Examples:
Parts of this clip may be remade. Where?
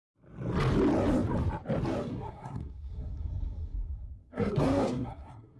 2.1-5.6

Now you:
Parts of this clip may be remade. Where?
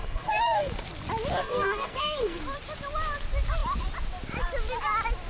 0.0-0.7; 1.4-2.4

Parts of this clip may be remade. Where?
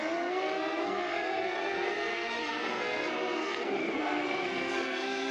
0.0-5.3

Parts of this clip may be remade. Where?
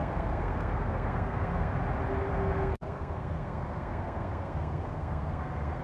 0.0-1.7; 2.3-5.8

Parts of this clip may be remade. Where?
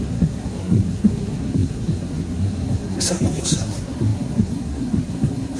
0.0-5.6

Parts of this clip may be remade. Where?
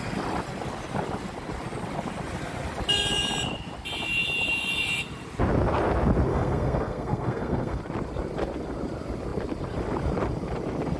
6.3-7.8